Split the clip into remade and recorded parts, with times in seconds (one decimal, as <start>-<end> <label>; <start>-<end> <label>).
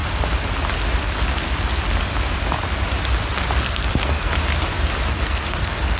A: 0.0-3.6 recorded; 3.6-4.3 remade; 4.3-5.1 recorded; 5.1-6.0 remade